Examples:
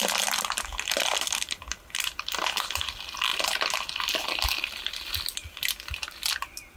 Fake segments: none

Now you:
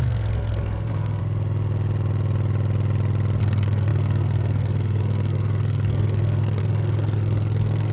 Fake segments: 0.0-1.2 (codec, SNAC); 3.4-7.9

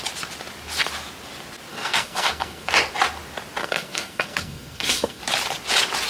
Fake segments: 1.7-2.7 (codec, SNAC); 3.6-5.2

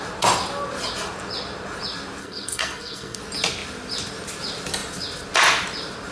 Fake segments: 2.2-3.2 (codec, SNAC)

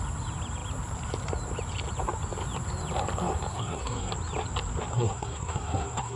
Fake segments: 3.5-4.1 (codec, SNAC); 4.9-6.2

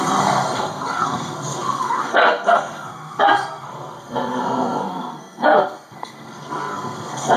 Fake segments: 0.0-7.4 (codec, SNAC)